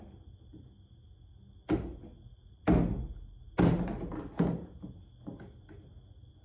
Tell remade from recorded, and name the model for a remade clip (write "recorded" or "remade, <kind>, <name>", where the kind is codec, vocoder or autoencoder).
recorded